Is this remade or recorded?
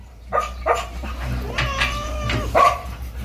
remade